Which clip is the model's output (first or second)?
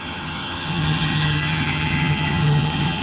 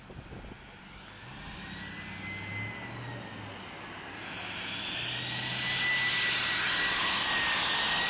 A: first